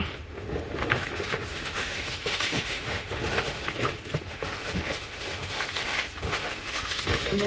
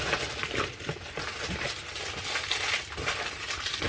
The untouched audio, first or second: second